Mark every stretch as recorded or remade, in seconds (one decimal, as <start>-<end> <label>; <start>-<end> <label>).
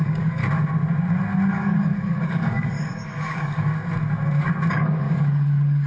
0.0-0.4 remade; 0.4-1.5 recorded; 1.5-3.7 remade; 3.7-4.7 recorded; 4.7-5.9 remade